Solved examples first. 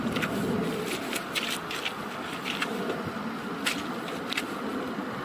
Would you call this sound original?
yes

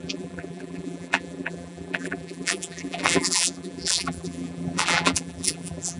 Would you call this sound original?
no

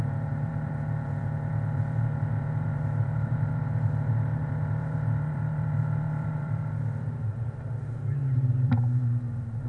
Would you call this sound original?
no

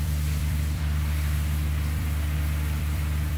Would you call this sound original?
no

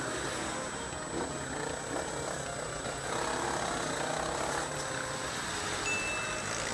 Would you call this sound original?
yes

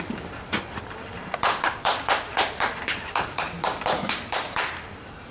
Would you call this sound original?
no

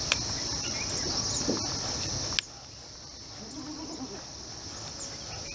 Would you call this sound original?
yes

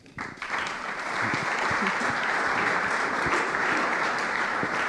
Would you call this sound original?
no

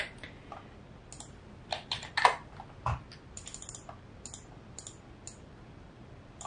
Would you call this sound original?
yes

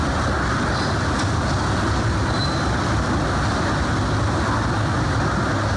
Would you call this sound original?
yes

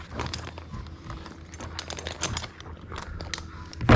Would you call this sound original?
yes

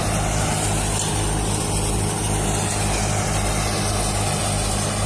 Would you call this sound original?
yes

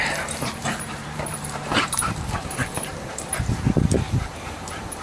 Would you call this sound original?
no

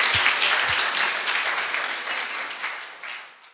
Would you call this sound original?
no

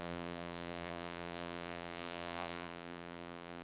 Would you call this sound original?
no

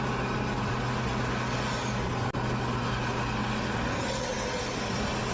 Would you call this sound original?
yes